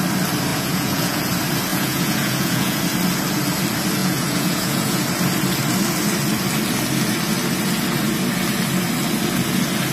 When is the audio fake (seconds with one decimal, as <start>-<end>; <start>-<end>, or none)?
0.5-1.2; 1.7-2.8; 4.0-5.0